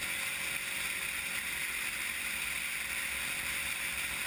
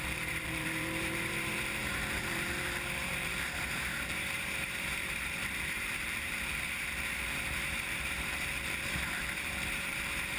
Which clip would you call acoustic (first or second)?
first